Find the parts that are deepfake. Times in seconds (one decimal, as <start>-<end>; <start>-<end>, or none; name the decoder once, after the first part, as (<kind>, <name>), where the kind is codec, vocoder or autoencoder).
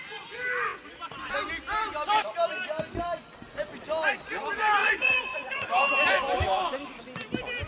4.8-5.7 (vocoder, Vocos)